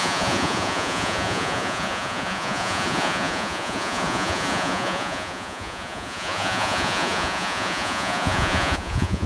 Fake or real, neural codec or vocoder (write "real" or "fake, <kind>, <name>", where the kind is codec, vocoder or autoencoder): fake, vocoder, Vocos